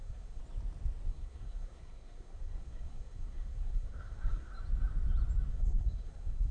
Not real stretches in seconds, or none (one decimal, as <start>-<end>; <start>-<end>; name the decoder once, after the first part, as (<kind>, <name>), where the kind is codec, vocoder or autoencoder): 0.0-0.4 (codec, SNAC); 1.1-4.5; 5.5-6.5